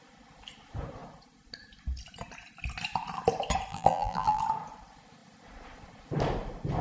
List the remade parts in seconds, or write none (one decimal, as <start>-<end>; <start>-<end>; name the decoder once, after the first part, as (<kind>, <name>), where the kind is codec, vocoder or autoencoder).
3.7-4.4 (vocoder, BigVGAN v2)